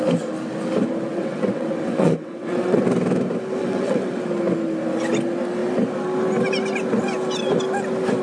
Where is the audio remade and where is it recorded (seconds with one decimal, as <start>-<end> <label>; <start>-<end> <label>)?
0.0-1.1 recorded; 1.1-2.8 remade; 2.8-3.6 recorded; 3.6-4.2 remade; 4.2-8.2 recorded